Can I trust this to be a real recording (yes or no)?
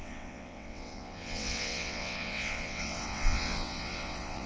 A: no